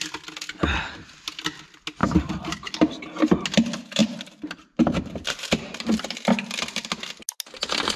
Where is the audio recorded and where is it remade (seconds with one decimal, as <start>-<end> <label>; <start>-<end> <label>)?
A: 0.0-2.0 recorded; 2.0-2.7 remade; 2.7-4.0 recorded; 4.0-6.2 remade; 6.2-8.0 recorded